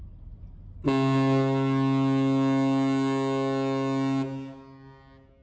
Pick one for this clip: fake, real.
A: real